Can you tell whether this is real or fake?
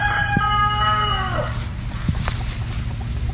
real